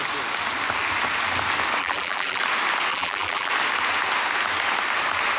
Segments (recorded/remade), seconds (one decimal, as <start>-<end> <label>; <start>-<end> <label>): 0.0-1.8 recorded; 1.8-2.4 remade; 2.4-2.9 recorded; 2.9-3.5 remade; 3.5-5.4 recorded